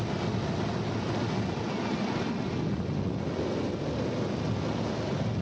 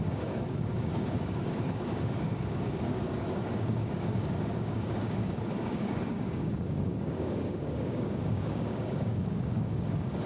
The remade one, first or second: second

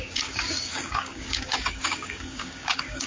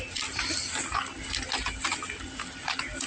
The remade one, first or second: first